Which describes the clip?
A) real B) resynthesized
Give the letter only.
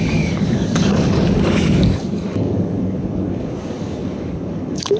B